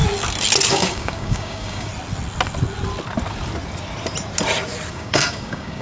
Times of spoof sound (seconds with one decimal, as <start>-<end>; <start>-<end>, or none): 0.7-1.9; 4.9-5.8